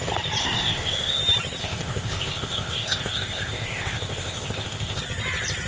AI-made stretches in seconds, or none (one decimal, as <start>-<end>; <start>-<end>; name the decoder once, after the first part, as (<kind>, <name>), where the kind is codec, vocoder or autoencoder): 0.4-1.2 (codec, ZipCodec); 1.6-5.0